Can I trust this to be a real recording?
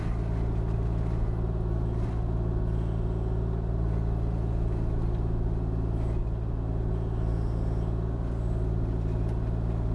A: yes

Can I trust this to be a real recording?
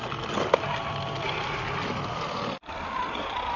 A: yes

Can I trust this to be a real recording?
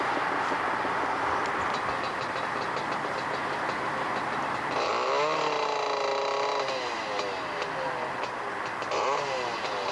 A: yes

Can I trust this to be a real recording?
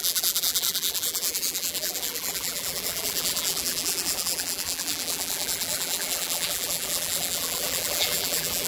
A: no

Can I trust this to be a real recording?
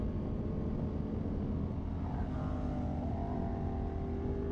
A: yes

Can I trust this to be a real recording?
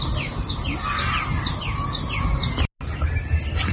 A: yes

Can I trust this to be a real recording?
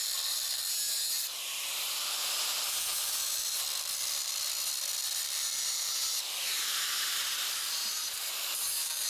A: no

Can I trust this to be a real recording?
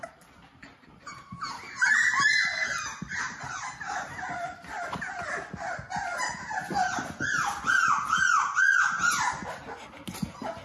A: yes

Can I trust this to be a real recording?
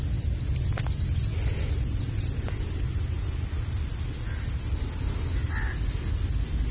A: yes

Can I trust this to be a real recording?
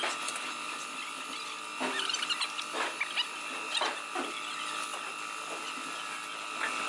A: yes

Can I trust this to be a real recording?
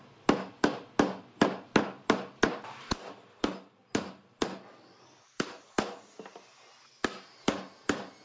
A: yes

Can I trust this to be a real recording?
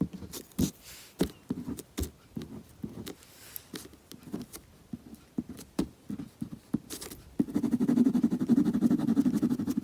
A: yes